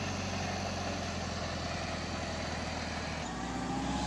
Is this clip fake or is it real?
real